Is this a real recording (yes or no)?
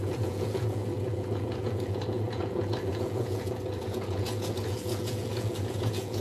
no